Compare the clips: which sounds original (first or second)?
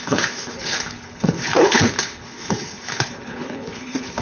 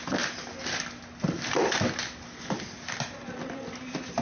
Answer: second